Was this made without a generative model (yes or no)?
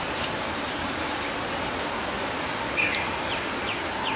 yes